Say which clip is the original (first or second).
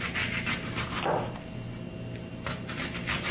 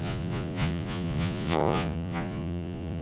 first